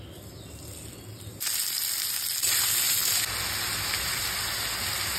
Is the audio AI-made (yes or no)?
no